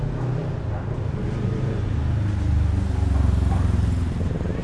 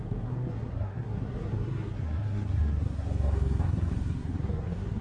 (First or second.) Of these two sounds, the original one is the first